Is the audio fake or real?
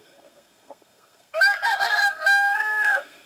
fake